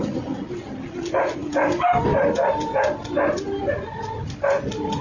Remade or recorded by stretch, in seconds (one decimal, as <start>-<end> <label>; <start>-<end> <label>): 0.0-5.0 recorded